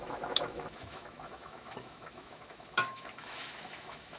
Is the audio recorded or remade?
remade